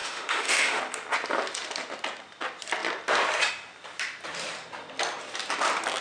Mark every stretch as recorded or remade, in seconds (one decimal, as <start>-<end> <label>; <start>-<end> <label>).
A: 0.0-0.8 remade; 0.8-6.0 recorded